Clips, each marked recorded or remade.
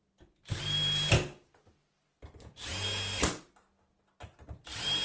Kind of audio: recorded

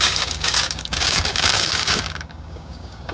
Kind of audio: remade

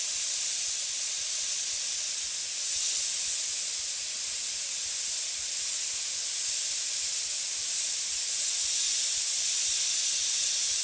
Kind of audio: recorded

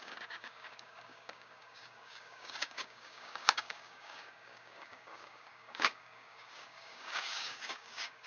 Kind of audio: remade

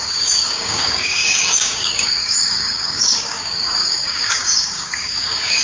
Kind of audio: remade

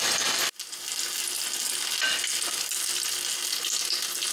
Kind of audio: recorded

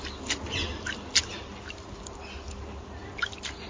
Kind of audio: recorded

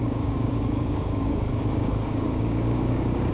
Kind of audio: remade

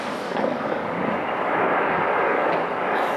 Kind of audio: remade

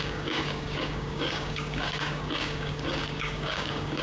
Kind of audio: remade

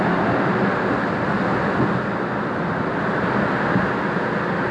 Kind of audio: recorded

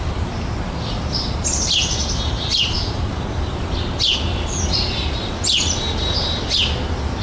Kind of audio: recorded